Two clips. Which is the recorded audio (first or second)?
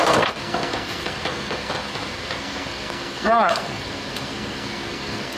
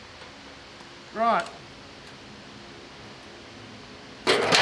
second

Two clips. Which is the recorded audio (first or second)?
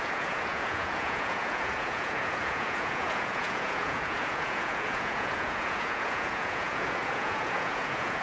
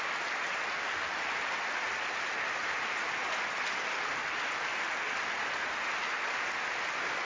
second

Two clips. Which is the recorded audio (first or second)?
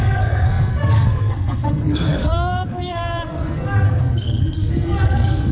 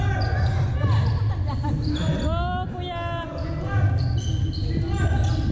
second